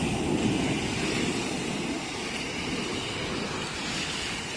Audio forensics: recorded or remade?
recorded